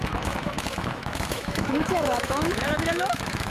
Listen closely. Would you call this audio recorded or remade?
remade